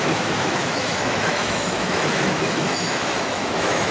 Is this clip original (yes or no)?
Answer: no